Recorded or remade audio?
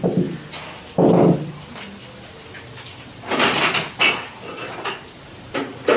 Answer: recorded